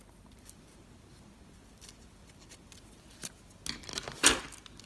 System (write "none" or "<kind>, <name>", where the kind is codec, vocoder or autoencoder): none